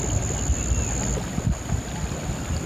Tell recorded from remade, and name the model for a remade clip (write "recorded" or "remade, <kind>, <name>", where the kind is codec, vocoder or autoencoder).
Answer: recorded